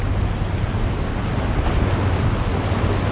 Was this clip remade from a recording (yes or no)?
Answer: no